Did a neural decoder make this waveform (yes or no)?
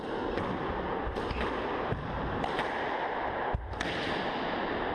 no